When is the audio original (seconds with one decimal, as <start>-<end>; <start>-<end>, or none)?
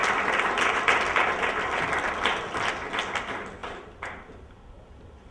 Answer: 2.2-3.6